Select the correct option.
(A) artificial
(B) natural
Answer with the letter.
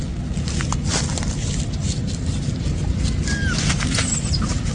B